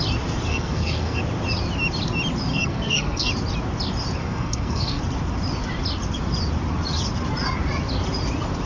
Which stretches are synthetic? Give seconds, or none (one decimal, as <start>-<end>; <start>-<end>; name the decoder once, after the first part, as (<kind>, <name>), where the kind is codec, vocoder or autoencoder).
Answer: 0.5-1.2 (codec, SNAC); 2.5-3.3; 4.2-5.0